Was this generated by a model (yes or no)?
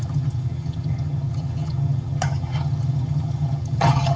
yes